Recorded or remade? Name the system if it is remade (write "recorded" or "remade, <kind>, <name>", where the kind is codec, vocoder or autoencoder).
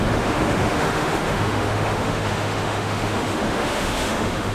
remade, autoencoder, DAC-VAE